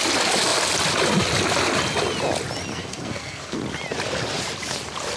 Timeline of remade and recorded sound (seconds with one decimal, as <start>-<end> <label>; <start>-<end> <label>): 0.0-2.7 recorded; 2.7-3.6 remade; 3.6-5.2 recorded